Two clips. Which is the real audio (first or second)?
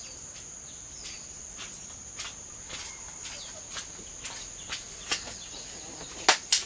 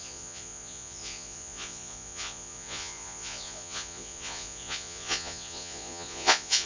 first